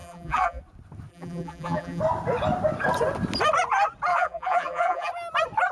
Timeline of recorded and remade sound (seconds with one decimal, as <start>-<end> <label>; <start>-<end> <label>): 0.0-0.6 remade; 0.6-1.1 recorded; 1.1-2.0 remade; 2.0-4.1 recorded; 4.1-5.1 remade; 5.1-5.7 recorded